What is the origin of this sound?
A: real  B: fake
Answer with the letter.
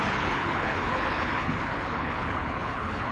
B